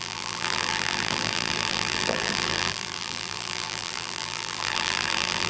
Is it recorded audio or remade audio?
remade